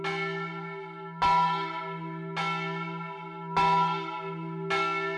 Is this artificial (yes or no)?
no